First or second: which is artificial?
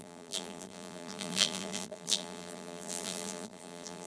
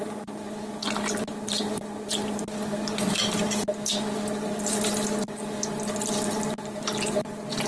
first